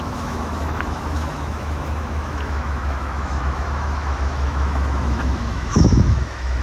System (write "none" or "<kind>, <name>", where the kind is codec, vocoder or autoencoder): autoencoder, DAC-VAE